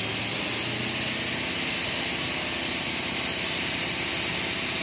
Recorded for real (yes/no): yes